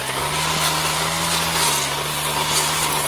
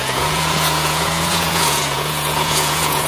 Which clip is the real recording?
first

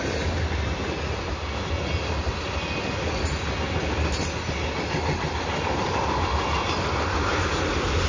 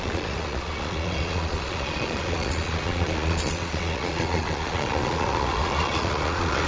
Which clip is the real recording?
first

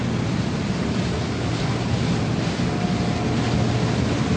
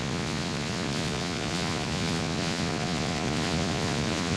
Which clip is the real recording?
first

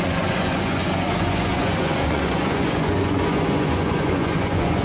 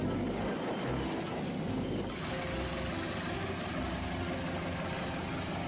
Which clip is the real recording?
second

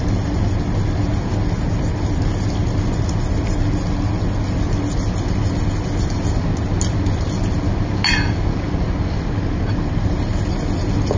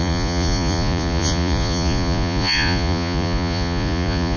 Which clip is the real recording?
first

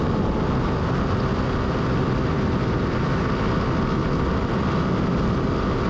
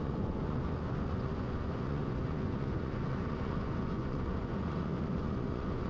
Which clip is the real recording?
first